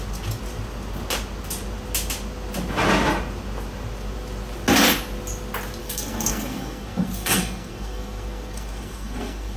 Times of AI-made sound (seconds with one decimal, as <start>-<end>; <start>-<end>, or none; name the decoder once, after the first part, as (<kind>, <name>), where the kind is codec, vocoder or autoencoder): 5.8-9.6 (codec, SNAC)